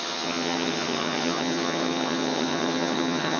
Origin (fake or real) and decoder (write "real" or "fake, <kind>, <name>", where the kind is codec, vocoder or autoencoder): fake, vocoder, HiFi-GAN